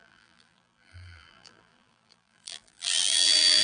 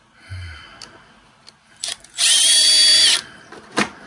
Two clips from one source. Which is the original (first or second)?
second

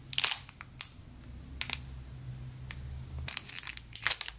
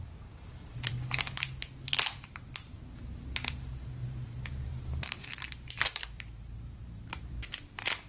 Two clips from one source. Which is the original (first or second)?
first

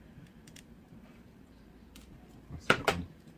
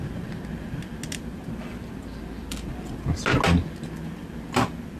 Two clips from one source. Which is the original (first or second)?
second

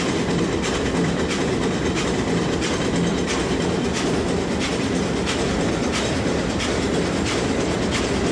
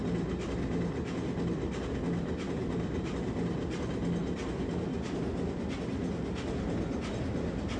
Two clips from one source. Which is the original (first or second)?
second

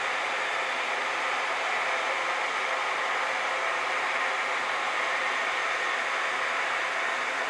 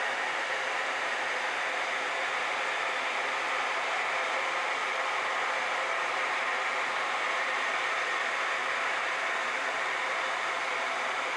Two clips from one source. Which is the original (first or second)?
first